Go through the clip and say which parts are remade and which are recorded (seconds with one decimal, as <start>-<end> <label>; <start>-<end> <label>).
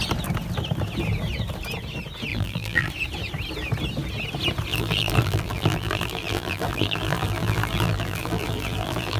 0.0-2.3 recorded; 2.3-2.9 remade; 2.9-4.7 recorded; 4.7-9.2 remade